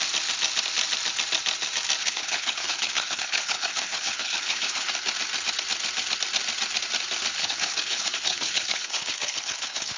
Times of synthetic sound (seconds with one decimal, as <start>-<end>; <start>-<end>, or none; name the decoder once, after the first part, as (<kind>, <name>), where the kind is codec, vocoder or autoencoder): 2.0-4.9 (codec, HILCodec); 7.4-10.0